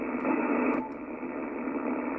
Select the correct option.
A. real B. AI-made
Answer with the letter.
A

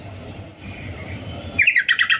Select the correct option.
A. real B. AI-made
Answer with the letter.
B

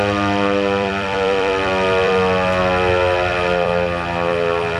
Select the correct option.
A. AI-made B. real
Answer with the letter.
A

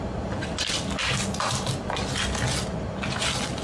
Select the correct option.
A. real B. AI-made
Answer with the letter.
A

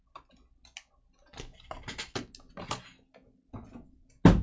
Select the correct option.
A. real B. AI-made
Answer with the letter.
A